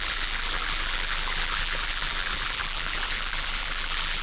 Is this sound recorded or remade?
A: remade